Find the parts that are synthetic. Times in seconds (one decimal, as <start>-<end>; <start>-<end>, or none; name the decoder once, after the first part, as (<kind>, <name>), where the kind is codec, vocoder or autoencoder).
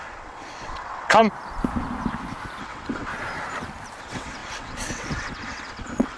0.0-1.2 (vocoder, WaveNeXt); 2.6-3.1; 4.0-6.2